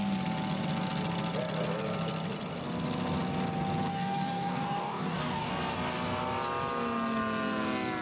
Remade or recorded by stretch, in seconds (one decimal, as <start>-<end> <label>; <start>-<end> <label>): 0.0-3.9 recorded; 3.9-5.5 remade; 5.5-8.0 recorded